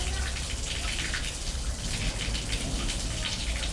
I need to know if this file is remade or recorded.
recorded